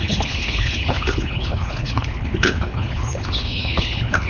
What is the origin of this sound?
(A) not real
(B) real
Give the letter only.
A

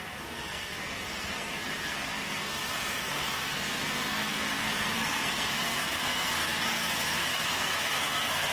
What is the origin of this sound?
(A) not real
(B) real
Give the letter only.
A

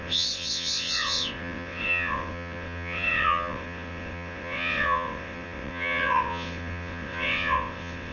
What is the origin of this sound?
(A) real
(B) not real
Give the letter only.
B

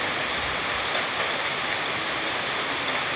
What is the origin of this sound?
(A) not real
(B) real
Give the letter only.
B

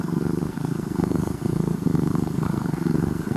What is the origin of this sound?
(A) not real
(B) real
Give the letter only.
A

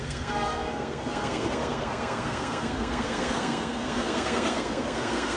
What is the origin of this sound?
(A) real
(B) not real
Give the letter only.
B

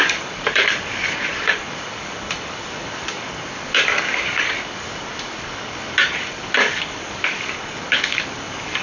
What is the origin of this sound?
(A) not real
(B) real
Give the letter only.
A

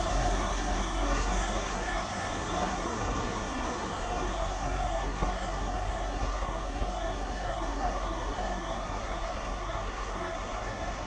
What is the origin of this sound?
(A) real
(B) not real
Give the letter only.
B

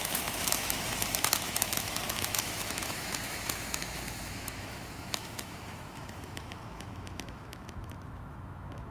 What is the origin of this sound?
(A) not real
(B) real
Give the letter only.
A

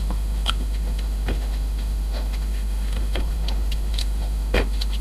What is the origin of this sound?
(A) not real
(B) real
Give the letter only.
A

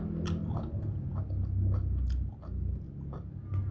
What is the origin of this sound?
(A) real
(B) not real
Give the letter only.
A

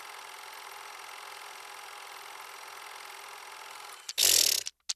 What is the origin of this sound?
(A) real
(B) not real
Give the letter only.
A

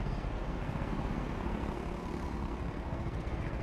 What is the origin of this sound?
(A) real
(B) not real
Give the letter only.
B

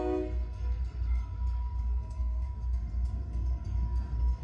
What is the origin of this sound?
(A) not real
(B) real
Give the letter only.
A